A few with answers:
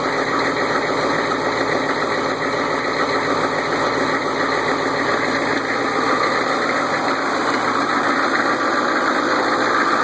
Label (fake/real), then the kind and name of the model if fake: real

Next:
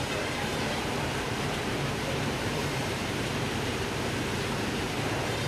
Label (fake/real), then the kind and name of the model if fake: fake, vocoder, BigVGAN v2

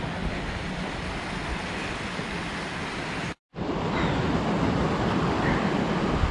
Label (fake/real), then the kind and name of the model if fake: real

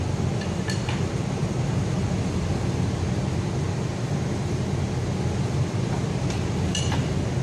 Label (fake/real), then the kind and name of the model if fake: real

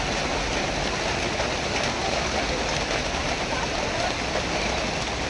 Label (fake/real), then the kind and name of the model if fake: real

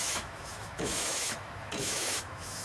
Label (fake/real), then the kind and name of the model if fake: fake, autoencoder, DAC-VAE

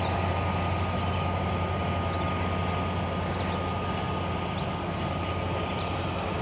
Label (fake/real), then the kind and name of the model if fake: real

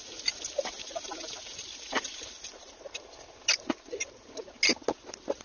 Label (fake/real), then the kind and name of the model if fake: real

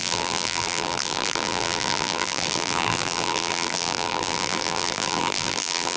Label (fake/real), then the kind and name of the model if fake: fake, vocoder, BigVGAN v2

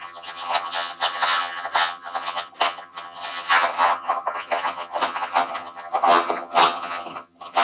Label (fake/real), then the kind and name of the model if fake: fake, vocoder, HiFi-GAN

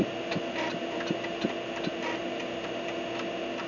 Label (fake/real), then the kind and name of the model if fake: real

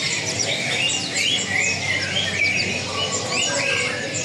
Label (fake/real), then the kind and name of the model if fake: real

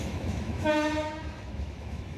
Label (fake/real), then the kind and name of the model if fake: fake, autoencoder, DAC-VAE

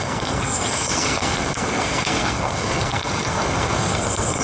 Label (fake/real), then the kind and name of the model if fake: fake, codec, SNAC